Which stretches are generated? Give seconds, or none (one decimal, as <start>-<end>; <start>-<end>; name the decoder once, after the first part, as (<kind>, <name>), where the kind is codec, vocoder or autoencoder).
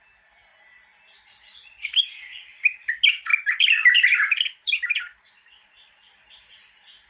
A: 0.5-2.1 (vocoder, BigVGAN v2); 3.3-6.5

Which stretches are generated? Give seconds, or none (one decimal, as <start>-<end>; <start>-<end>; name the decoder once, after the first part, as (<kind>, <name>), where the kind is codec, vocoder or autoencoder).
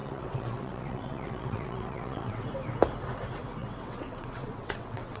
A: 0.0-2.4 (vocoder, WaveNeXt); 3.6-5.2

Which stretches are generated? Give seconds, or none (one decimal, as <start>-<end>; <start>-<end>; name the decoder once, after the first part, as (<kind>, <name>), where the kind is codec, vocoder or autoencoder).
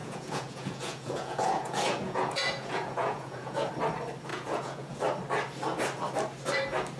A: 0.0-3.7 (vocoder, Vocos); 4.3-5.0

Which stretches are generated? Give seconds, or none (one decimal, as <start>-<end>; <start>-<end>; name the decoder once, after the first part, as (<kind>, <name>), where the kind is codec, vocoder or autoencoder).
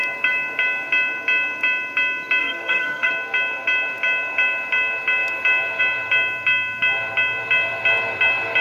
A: 2.4-3.1 (codec, SNAC)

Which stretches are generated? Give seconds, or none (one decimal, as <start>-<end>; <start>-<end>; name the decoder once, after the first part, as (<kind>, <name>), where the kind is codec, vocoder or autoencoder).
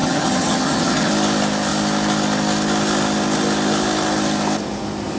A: 0.0-1.1 (vocoder, HiFi-GAN)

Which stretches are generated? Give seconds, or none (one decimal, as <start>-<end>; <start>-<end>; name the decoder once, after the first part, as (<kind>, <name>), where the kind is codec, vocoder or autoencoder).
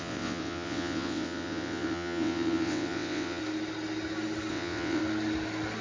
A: 0.0-3.4 (vocoder, WaveNeXt); 4.5-5.0